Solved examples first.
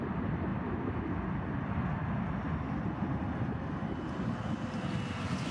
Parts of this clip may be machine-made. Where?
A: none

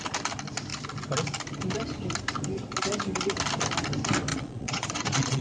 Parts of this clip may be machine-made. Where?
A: 4.3-5.4 (vocoder, Vocos)

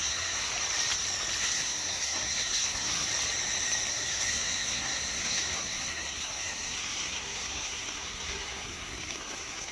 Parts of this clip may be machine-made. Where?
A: 0.0-0.5 (codec, SNAC); 1.4-3.1; 3.9-9.7

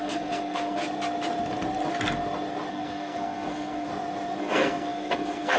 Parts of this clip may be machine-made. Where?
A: 0.0-0.8 (codec, SNAC); 2.7-3.9; 4.4-5.6

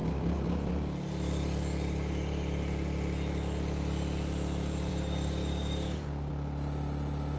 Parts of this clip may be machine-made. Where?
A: 0.0-0.7 (codec, DAC); 4.9-6.3

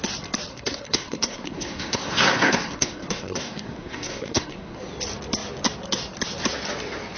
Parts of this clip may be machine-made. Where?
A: 0.5-4.8 (codec, SNAC)

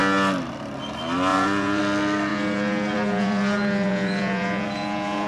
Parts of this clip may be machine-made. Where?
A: 1.3-1.8 (vocoder, Vocos); 2.3-5.3